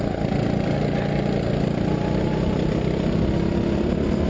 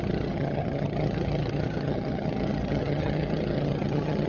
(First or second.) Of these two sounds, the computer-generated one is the second